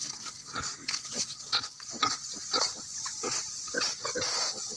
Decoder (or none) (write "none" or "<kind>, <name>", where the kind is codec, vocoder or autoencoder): vocoder, WaveNeXt